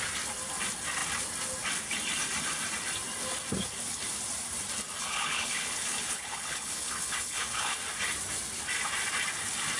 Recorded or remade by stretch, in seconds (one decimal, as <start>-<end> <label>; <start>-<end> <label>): 0.0-5.0 recorded; 5.0-7.8 remade; 7.8-9.8 recorded